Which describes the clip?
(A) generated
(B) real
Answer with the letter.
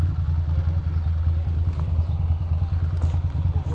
B